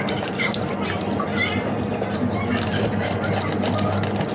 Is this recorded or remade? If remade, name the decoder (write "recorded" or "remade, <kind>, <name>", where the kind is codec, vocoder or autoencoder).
recorded